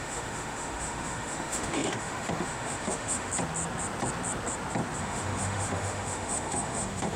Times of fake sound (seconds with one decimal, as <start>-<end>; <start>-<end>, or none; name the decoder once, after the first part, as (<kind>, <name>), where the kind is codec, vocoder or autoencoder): 0.0-3.3 (autoencoder, DAC-VAE); 5.0-7.2